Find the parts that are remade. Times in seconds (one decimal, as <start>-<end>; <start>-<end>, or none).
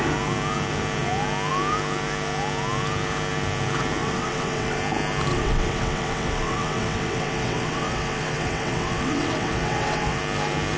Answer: 4.0-4.8; 5.3-10.2